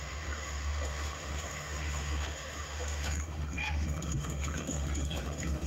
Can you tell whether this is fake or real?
fake